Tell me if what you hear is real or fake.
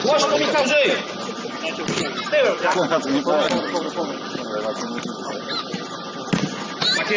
real